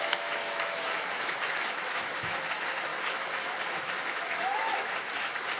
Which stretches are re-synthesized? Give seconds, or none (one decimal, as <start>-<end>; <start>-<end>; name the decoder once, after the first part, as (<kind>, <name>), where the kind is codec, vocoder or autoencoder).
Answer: 0.0-5.6 (autoencoder, DAC-VAE)